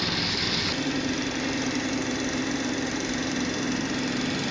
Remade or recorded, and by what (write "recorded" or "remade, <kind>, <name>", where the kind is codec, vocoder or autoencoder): recorded